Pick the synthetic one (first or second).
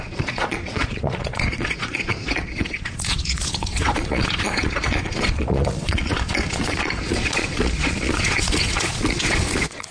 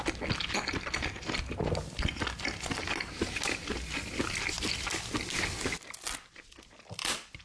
first